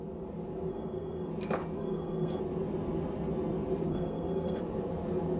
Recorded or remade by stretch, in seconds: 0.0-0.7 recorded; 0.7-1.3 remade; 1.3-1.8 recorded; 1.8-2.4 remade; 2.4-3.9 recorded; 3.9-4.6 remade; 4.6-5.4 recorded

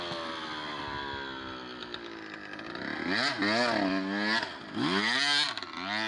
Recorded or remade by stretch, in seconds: 0.0-6.1 recorded

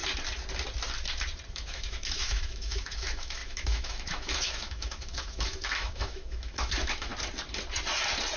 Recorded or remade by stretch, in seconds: 0.0-1.5 recorded; 1.5-7.1 remade; 7.1-8.4 recorded

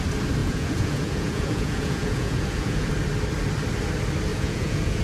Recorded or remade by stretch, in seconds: 0.0-0.4 recorded; 0.4-2.9 remade; 2.9-4.3 recorded; 4.3-5.0 remade

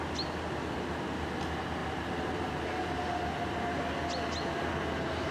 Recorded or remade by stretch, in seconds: 0.0-5.3 recorded

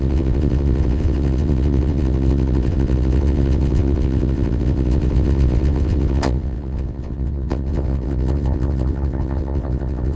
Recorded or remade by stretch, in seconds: 0.0-10.2 remade

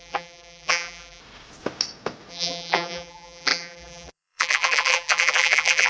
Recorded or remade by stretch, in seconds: 0.0-1.2 remade; 1.2-2.3 recorded; 2.3-5.9 remade

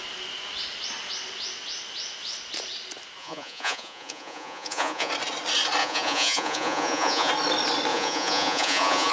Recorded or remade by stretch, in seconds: 0.0-3.2 recorded; 3.2-5.1 remade; 5.1-5.8 recorded; 5.8-7.3 remade; 7.3-7.9 recorded; 7.9-9.1 remade